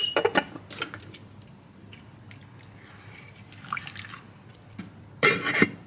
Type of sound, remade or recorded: remade